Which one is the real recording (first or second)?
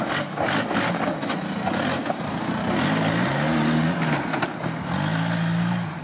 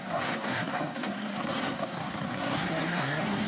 first